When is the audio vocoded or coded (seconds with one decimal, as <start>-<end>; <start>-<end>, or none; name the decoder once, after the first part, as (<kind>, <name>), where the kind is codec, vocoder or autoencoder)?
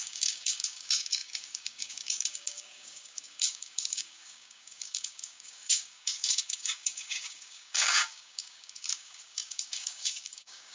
0.0-10.7 (codec, DAC)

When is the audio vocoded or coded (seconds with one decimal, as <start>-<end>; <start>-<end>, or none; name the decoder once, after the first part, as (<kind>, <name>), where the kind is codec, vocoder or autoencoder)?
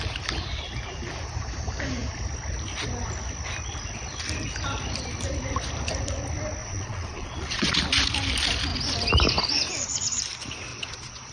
6.6-7.8 (vocoder, Vocos); 10.7-11.3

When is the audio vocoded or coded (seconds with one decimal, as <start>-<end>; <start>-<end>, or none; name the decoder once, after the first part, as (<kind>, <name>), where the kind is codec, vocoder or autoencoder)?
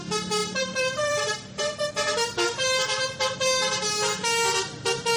0.4-1.9 (vocoder, BigVGAN v2)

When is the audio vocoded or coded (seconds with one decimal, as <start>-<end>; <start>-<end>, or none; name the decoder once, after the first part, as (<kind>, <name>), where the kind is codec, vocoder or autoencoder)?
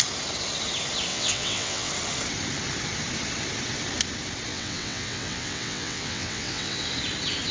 1.1-1.9 (vocoder, WaveNeXt); 4.5-6.9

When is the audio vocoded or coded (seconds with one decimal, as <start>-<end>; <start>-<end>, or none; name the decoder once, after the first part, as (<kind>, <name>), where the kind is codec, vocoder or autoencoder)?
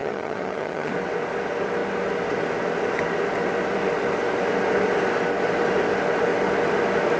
0.0-0.9 (vocoder, HiFi-GAN)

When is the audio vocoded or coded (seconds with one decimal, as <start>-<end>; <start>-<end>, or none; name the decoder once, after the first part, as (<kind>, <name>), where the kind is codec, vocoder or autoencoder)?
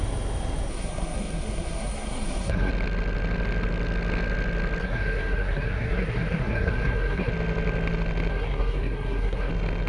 0.7-2.7 (codec, SNAC); 4.8-7.3; 8.3-9.5